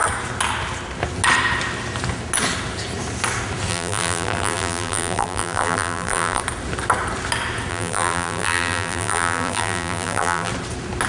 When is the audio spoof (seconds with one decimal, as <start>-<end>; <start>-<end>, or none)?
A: 3.7-6.4; 7.7-10.5